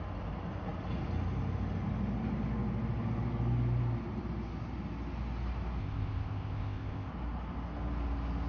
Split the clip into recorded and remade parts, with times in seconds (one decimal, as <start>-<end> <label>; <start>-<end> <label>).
0.0-5.8 recorded; 5.8-7.1 remade; 7.1-8.5 recorded